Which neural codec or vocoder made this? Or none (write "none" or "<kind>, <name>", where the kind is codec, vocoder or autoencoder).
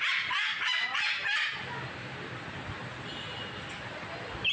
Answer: none